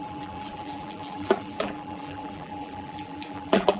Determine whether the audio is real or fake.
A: fake